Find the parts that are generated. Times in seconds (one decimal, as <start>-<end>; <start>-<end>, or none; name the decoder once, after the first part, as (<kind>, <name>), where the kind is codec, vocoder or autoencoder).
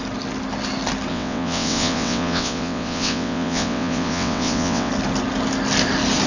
1.1-4.9 (vocoder, WaveNeXt)